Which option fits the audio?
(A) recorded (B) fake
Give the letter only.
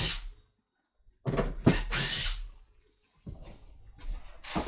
A